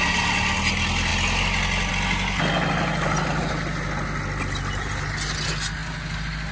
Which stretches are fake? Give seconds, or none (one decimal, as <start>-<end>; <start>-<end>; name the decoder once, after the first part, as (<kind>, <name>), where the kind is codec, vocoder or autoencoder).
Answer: none